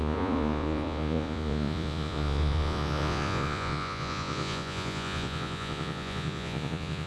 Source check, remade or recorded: remade